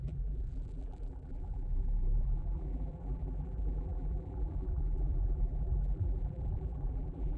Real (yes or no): no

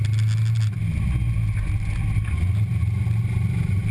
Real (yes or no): yes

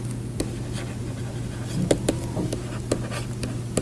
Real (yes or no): yes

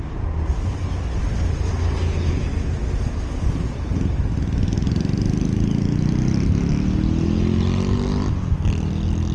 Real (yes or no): yes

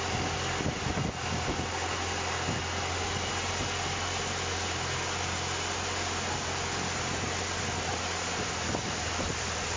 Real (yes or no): yes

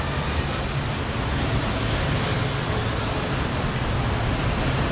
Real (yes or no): yes